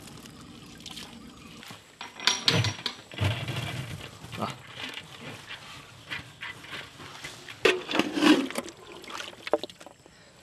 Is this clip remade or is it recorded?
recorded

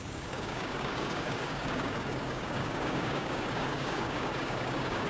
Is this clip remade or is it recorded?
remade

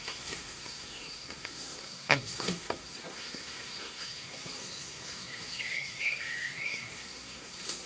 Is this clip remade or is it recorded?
remade